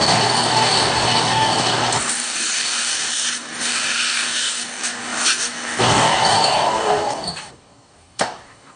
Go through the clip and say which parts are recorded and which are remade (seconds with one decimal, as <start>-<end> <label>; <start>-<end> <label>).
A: 0.0-8.8 remade